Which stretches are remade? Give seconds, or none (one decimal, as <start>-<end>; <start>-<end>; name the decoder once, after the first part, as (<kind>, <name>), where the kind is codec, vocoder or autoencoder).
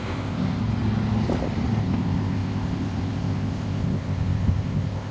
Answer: 0.0-0.6 (codec, ZipCodec); 1.8-5.1